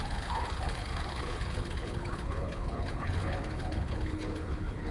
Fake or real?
fake